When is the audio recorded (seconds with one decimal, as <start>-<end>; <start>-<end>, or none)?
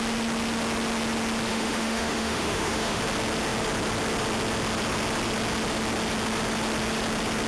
0.0-1.5; 3.0-7.5